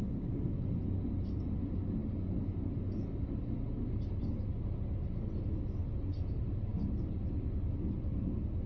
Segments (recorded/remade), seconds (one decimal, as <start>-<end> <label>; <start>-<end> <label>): 0.0-8.7 recorded